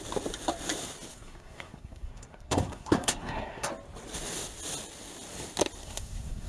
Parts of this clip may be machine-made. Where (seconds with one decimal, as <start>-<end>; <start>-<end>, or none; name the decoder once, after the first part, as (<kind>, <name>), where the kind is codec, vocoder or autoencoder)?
1.1-3.7 (codec, SNAC); 5.8-6.5